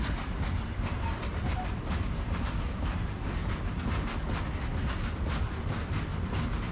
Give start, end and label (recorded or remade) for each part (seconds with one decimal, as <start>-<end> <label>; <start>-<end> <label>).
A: 0.0-1.3 recorded; 1.3-3.7 remade; 3.7-6.7 recorded